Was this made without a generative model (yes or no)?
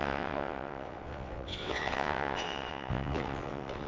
no